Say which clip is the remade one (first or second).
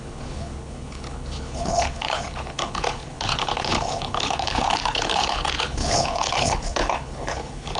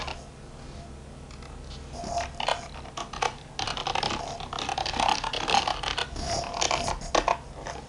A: first